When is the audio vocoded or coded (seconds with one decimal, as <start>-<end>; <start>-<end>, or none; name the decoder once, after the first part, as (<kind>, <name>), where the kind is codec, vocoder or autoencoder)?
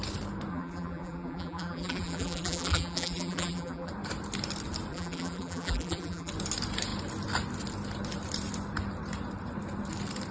0.5-3.9 (vocoder, BigVGAN v2); 4.9-6.3